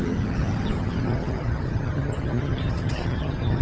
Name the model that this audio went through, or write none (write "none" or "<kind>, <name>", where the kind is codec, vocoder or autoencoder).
vocoder, HiFi-GAN